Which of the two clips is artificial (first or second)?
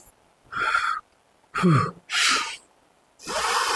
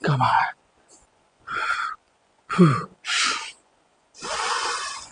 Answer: second